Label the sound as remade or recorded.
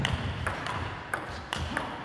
recorded